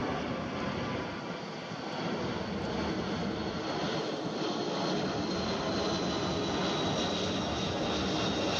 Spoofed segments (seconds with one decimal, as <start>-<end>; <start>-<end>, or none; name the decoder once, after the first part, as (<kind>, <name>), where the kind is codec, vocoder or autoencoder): none